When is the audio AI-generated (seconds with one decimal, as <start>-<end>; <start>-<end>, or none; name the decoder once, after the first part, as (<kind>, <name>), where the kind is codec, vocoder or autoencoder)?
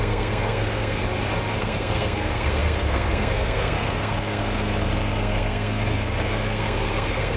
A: 0.0-1.0 (codec, SNAC); 1.6-7.4